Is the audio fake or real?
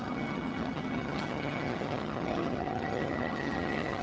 fake